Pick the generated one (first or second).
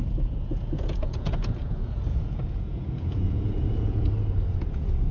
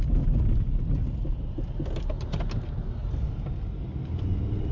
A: first